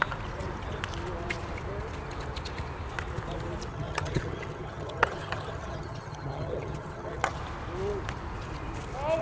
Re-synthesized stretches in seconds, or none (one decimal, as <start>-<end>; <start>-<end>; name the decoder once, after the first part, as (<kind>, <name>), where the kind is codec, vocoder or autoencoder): 3.7-7.4 (vocoder, HiFi-GAN)